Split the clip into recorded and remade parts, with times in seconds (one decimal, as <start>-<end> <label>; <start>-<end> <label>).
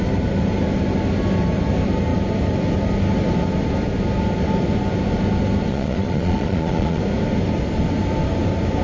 0.0-5.7 recorded; 5.7-7.0 remade; 7.0-8.8 recorded